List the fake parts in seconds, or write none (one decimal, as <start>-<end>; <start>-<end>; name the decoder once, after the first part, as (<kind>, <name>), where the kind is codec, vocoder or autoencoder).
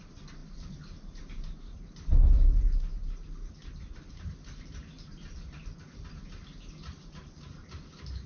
none